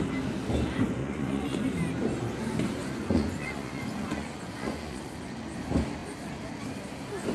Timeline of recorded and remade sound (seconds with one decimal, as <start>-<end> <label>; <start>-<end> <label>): 0.0-1.0 recorded; 1.0-1.6 remade; 1.6-2.8 recorded; 2.8-5.1 remade; 5.1-7.3 recorded